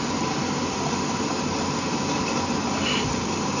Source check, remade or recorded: recorded